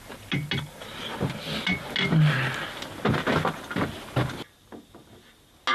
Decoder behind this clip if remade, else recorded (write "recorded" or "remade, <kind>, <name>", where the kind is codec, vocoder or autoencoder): recorded